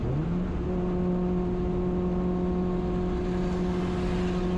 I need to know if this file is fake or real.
real